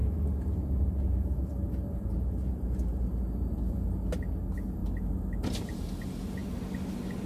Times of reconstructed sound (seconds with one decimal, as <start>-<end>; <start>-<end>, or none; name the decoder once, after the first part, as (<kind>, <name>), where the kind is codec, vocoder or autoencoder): 0.0-3.6 (vocoder, BigVGAN v2)